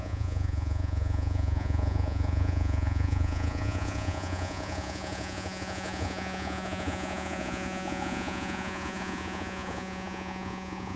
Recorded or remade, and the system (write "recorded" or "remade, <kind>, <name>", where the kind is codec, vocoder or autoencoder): remade, vocoder, Vocos